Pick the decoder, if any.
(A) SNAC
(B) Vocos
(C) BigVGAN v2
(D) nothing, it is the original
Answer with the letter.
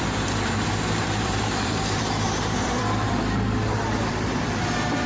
C